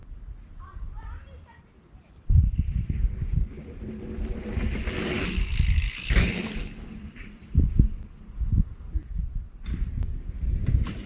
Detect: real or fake real